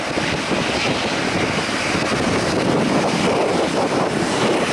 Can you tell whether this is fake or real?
real